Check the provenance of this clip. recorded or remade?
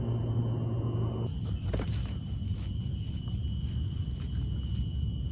recorded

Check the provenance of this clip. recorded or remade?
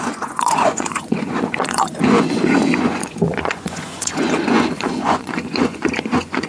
remade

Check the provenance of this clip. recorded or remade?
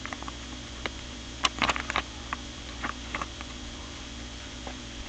remade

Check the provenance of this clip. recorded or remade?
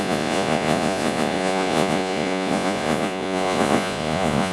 remade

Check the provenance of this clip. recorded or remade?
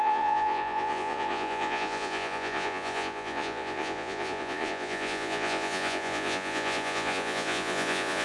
remade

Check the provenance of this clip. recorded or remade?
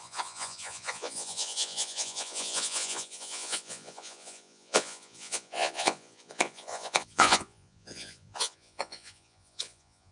remade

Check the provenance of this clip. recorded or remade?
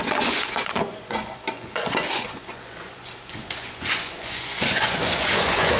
remade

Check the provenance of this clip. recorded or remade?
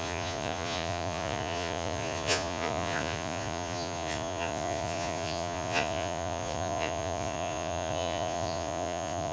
remade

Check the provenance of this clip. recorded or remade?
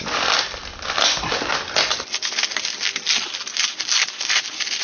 recorded